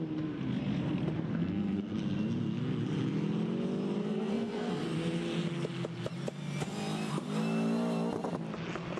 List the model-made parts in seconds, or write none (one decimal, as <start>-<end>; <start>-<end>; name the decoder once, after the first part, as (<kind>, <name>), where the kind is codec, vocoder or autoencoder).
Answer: 1.3-1.9 (codec, SNAC); 4.0-4.7